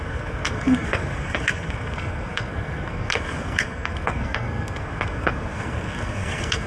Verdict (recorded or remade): remade